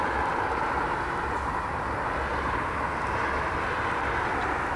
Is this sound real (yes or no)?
yes